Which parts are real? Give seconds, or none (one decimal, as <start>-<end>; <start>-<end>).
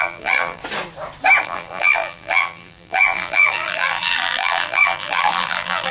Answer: 0.6-1.4